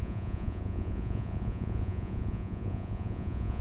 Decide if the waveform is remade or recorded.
remade